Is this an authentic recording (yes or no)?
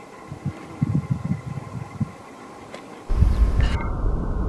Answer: yes